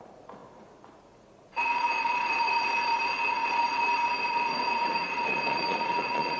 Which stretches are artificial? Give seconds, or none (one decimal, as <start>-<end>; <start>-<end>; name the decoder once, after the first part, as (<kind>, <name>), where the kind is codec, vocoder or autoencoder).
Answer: 0.0-6.4 (vocoder, Vocos)